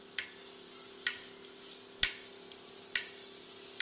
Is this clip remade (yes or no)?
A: no